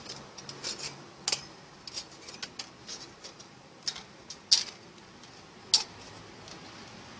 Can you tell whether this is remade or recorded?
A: recorded